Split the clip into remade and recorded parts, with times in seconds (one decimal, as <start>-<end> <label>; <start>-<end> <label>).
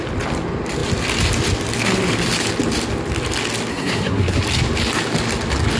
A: 0.0-3.7 recorded; 3.7-4.4 remade; 4.4-5.8 recorded